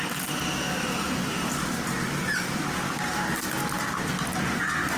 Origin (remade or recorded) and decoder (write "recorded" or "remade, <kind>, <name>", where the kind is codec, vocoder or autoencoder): recorded